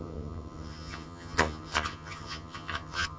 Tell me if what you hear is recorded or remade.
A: remade